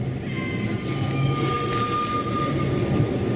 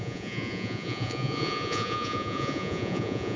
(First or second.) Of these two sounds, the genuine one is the first